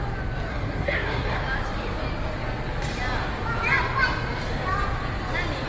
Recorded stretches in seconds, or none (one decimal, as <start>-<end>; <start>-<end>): 0.0-0.5; 1.4-5.7